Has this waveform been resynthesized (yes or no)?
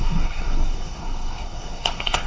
yes